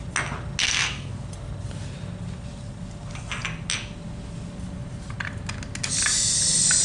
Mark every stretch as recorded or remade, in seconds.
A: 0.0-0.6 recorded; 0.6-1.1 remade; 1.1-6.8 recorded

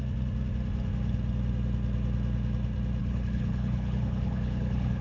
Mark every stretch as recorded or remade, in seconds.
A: 0.0-3.0 recorded; 3.0-5.0 remade

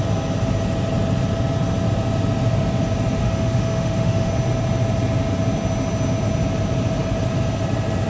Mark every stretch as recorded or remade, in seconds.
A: 0.0-3.2 recorded; 3.2-4.3 remade; 4.3-8.1 recorded

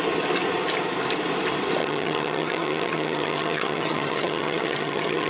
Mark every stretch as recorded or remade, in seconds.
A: 0.0-1.8 recorded; 1.8-5.3 remade

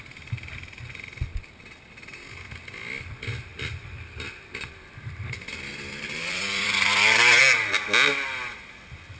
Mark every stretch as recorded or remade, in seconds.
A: 0.0-3.5 recorded; 3.5-4.7 remade; 4.7-5.7 recorded; 5.7-7.4 remade; 7.4-9.2 recorded

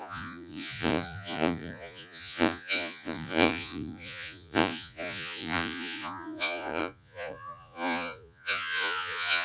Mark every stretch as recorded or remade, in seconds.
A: 0.0-9.4 remade